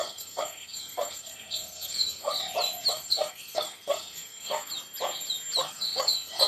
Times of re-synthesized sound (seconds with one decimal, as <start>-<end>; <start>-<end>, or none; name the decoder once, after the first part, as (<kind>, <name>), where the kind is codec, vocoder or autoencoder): 0.0-2.4 (codec, SNAC); 2.9-4.7; 5.6-6.5